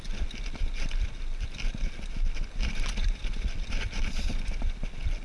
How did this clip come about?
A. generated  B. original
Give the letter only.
B